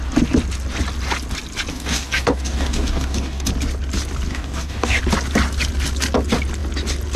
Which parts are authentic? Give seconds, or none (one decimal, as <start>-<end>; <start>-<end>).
0.0-1.7; 3.5-4.3; 5.0-7.2